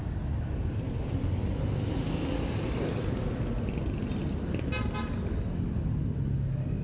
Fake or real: real